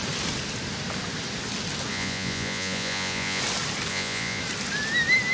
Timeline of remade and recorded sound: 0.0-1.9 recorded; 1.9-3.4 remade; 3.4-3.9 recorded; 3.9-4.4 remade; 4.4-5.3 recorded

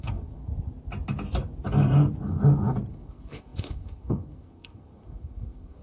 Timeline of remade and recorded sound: 0.0-0.4 remade; 0.4-2.9 recorded; 2.9-5.8 remade

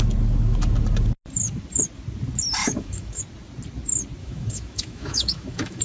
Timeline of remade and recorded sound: 0.0-2.6 recorded; 2.6-3.2 remade; 3.2-4.2 recorded; 4.2-5.8 remade